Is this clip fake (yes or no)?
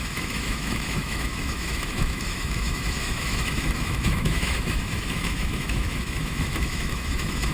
yes